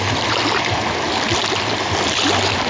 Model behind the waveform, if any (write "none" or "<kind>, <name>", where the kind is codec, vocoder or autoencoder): none